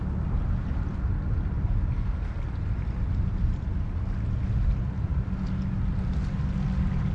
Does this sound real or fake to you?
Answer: real